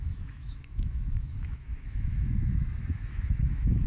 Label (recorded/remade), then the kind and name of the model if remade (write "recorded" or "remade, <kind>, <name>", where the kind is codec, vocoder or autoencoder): remade, autoencoder, DAC-VAE